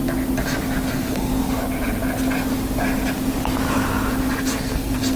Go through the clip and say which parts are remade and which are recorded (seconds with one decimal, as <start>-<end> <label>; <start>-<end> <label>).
0.0-0.9 recorded; 0.9-1.3 remade; 1.3-4.4 recorded; 4.4-5.2 remade